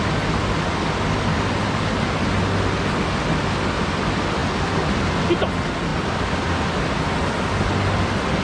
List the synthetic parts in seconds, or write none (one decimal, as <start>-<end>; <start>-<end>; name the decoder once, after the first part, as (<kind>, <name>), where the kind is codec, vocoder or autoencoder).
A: none